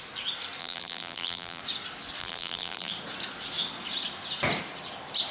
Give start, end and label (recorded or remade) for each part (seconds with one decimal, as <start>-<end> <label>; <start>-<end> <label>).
0.0-0.6 recorded; 0.6-1.6 remade; 1.6-2.2 recorded; 2.2-2.9 remade; 2.9-5.3 recorded